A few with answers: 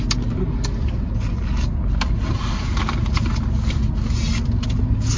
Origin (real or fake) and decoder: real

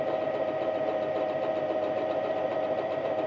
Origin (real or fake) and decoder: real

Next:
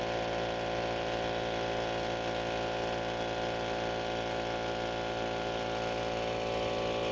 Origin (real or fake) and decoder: real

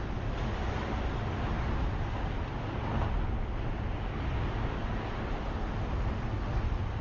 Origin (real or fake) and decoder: real